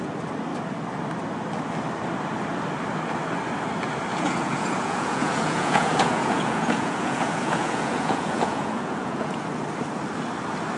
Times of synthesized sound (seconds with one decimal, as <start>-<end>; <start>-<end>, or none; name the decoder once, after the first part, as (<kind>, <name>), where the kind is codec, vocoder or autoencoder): 4.1-9.4 (vocoder, Vocos)